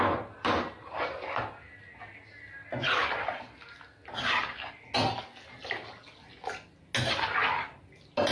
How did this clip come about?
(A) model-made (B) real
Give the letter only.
B